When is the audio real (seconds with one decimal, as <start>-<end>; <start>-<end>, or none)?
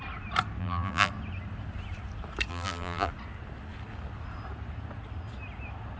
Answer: 0.0-0.6; 1.1-2.5; 3.1-6.0